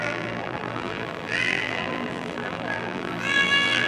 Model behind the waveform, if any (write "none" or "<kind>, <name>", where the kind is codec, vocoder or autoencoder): vocoder, BigVGAN v2